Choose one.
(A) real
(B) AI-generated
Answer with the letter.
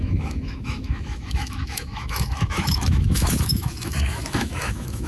B